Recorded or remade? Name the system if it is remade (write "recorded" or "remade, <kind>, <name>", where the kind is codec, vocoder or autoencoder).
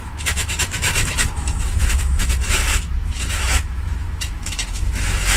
remade, autoencoder, DAC-VAE